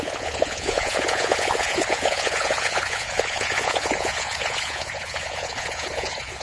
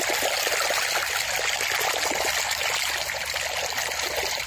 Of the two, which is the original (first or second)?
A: second